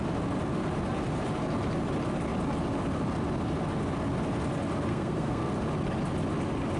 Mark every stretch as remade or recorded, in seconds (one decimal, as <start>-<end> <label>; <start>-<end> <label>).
0.0-4.9 recorded; 4.9-5.5 remade; 5.5-6.8 recorded